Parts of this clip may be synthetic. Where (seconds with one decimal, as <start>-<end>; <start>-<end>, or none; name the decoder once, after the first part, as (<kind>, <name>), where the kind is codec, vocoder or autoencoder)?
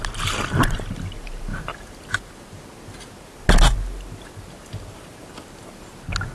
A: none